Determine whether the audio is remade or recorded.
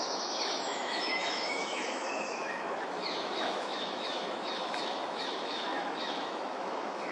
remade